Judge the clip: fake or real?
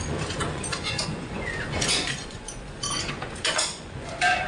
fake